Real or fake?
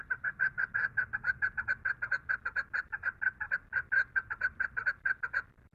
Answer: real